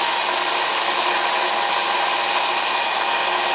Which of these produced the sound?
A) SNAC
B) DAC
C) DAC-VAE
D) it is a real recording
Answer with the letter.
D